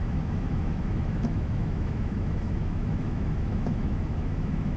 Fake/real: fake